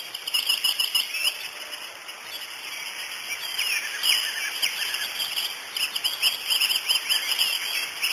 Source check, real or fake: real